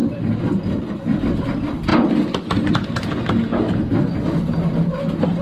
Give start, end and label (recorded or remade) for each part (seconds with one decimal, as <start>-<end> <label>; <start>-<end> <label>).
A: 0.0-5.4 recorded